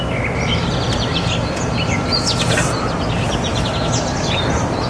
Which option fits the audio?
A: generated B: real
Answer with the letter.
B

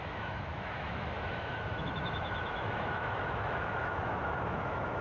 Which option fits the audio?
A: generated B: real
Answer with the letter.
A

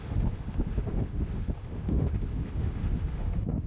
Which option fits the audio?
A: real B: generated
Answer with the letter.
B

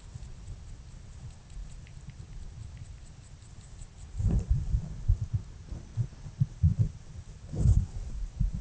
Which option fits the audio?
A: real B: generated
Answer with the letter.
A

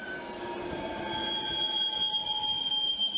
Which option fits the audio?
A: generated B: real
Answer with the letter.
B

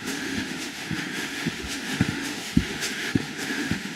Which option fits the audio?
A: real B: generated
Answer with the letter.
B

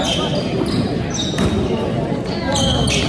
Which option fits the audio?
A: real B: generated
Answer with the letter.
A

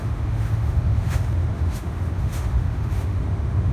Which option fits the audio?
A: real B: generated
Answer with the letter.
B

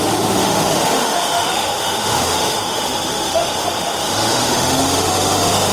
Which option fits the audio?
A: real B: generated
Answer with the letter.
B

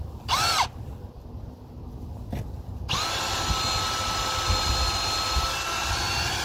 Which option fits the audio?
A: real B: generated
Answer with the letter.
A